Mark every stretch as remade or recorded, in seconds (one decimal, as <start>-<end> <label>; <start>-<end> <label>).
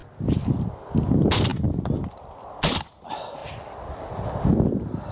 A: 0.0-5.1 recorded